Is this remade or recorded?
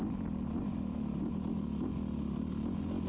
recorded